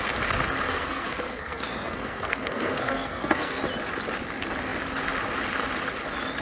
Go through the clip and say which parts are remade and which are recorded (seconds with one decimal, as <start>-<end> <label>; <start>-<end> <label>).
0.0-0.7 recorded; 0.7-3.6 remade; 3.6-6.4 recorded